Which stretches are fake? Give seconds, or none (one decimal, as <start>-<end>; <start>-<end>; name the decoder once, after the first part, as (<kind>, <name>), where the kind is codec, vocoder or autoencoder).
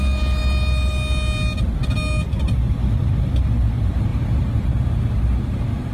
none